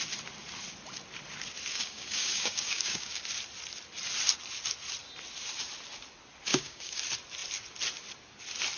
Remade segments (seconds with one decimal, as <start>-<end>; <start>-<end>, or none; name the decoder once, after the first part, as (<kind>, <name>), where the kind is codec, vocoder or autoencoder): 1.7-3.2 (codec, DAC); 6.5-7.0